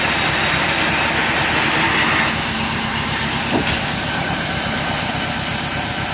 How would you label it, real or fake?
real